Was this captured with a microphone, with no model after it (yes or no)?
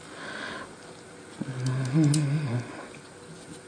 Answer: yes